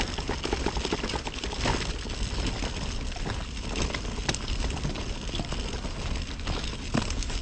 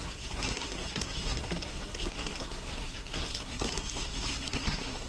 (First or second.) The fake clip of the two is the second